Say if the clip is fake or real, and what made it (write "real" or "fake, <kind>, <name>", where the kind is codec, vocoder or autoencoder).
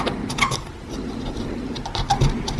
real